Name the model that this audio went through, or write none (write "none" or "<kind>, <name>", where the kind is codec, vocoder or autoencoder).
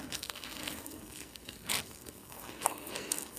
codec, SNAC